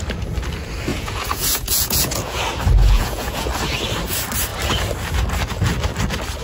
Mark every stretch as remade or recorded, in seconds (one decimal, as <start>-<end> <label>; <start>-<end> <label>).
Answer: 0.0-0.9 recorded; 0.9-2.4 remade; 2.4-2.8 recorded; 2.8-3.5 remade; 3.5-6.4 recorded